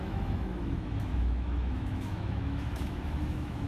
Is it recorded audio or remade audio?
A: remade